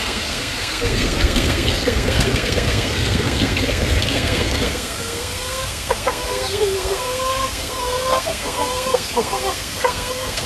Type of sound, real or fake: fake